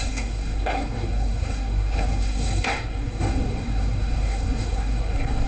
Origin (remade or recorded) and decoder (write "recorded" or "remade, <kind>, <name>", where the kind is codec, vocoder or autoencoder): remade, codec, SNAC